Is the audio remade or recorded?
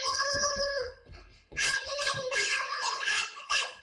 remade